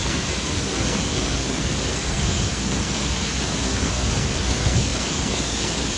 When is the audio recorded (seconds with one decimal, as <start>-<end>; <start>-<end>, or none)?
none